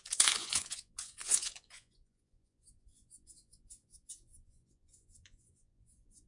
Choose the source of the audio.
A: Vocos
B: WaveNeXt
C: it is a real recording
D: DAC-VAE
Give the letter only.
A